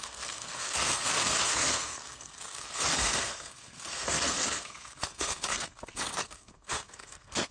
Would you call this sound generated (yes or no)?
yes